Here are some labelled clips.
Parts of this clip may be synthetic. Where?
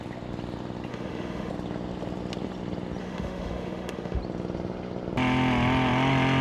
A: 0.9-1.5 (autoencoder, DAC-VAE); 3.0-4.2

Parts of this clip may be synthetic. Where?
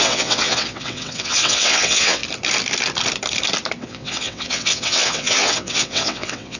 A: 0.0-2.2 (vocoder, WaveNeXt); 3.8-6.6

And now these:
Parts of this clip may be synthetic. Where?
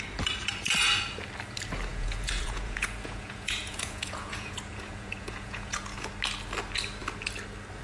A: 1.9-6.1 (vocoder, Vocos)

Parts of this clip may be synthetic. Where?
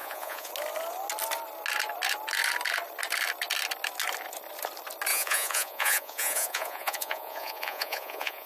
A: 0.0-0.5 (vocoder, Vocos); 5.1-8.5